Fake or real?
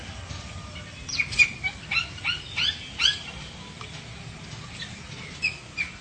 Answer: real